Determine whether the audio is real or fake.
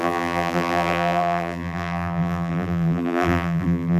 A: fake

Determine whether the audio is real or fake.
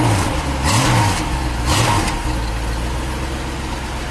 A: real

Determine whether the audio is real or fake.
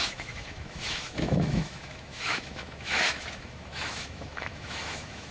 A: fake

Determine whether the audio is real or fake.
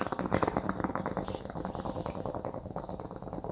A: real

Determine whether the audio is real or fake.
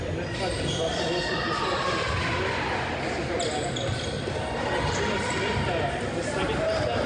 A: real